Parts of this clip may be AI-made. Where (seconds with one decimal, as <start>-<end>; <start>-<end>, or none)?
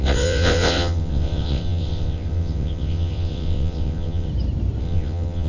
0.0-4.3; 4.8-5.5